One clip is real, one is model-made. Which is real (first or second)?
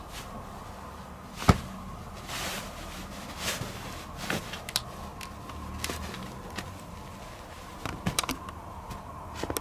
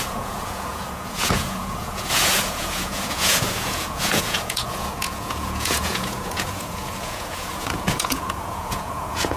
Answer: first